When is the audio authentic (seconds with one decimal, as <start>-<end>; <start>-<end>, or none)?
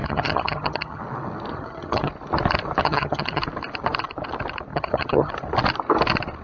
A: 1.0-1.5; 2.1-2.8; 3.4-4.7; 5.3-6.4